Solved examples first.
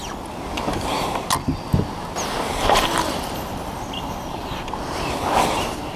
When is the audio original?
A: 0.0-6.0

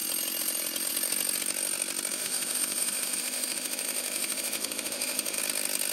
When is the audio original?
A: 0.0-2.1; 5.4-5.9